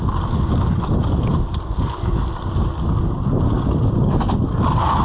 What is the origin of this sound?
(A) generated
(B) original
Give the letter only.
B